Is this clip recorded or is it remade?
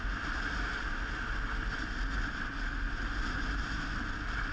recorded